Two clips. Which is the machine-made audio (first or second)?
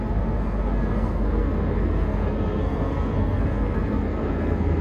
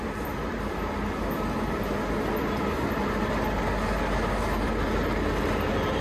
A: first